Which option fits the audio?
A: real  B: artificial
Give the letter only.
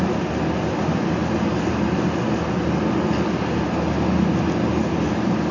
A